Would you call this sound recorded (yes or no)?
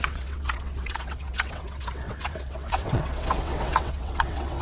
no